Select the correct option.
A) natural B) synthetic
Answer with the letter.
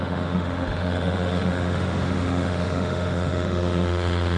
B